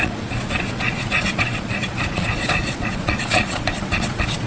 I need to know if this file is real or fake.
fake